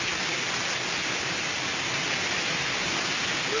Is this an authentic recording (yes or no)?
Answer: yes